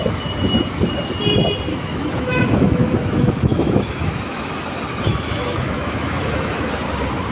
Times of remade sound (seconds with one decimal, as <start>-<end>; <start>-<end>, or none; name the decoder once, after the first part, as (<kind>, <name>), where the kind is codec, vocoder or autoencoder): 1.7-4.5 (autoencoder, DAC-VAE); 5.1-6.7